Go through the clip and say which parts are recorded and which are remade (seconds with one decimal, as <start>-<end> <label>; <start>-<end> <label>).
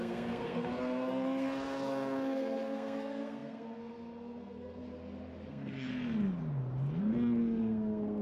0.0-4.8 remade; 4.8-5.5 recorded; 5.5-5.9 remade; 5.9-7.0 recorded; 7.0-8.2 remade